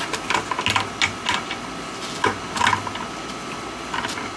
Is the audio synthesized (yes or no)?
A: no